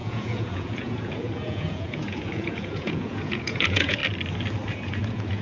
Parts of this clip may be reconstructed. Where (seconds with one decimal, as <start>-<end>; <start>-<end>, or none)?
0.0-4.0; 4.7-5.4